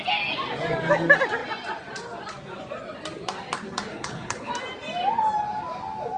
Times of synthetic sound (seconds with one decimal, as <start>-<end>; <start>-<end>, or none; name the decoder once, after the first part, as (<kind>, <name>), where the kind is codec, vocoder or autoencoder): 3.9-4.5 (codec, HILCodec)